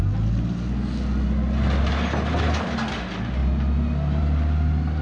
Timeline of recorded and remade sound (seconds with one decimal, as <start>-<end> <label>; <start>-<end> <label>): 0.0-5.0 recorded

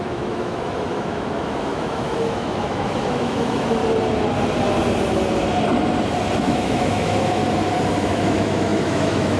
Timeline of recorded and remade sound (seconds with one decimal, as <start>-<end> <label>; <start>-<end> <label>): 0.0-3.8 remade; 3.8-6.4 recorded; 6.4-7.4 remade; 7.4-8.0 recorded; 8.0-9.4 remade

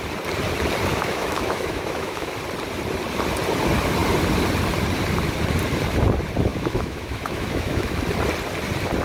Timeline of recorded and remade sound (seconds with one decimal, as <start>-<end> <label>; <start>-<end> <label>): 0.0-0.9 recorded; 0.9-2.3 remade; 2.3-6.5 recorded; 6.5-8.0 remade; 8.0-9.0 recorded

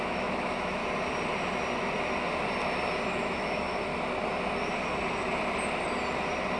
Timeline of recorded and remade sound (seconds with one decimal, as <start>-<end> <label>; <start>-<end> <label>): 0.0-0.8 remade; 0.8-3.1 recorded; 3.1-3.9 remade; 3.9-6.6 recorded

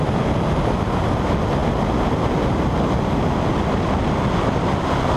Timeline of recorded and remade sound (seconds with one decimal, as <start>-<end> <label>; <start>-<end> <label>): 0.0-5.2 recorded

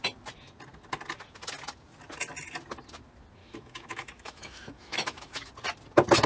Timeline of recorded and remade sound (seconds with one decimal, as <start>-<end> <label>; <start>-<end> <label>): 0.0-3.4 recorded; 3.4-5.5 remade; 5.5-6.3 recorded

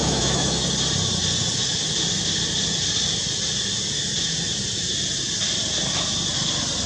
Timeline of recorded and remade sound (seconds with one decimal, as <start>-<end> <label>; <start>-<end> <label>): 0.0-0.6 remade; 0.6-6.9 recorded

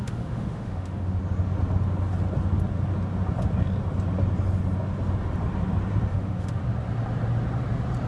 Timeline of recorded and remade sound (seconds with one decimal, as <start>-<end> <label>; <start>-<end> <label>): 0.0-1.2 remade; 1.2-6.1 recorded; 6.1-6.6 remade; 6.6-8.1 recorded